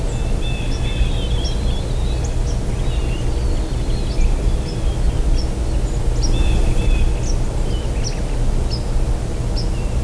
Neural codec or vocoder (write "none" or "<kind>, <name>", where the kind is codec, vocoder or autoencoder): none